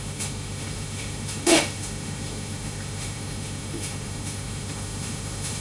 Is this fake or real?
fake